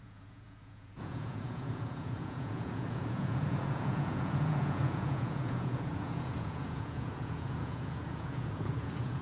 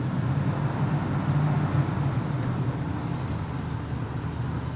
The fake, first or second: first